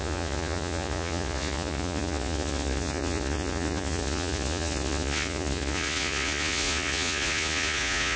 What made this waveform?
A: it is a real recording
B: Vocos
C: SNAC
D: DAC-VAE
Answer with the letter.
B